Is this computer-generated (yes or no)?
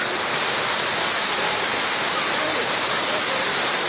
no